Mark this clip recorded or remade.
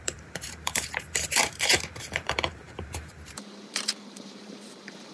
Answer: remade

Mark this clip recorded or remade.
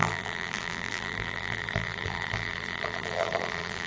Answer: remade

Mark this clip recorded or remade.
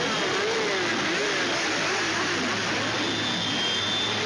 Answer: recorded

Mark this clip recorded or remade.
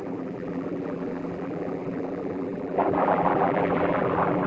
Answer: remade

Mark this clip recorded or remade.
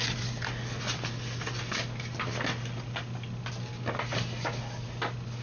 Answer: recorded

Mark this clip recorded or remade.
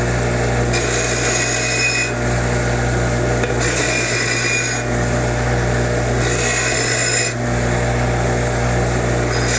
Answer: recorded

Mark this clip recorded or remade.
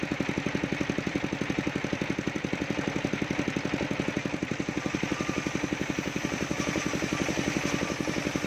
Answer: remade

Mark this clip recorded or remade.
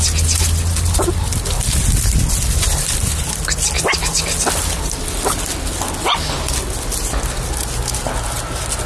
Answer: recorded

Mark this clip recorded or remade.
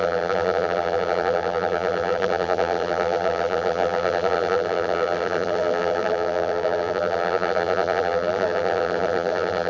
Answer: remade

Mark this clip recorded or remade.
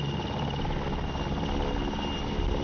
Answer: recorded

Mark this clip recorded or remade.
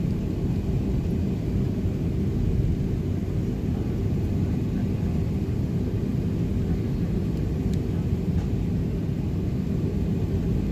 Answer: recorded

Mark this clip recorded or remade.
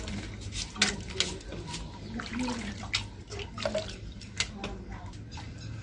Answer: recorded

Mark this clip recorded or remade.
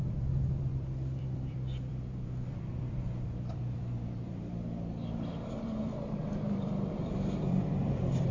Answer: remade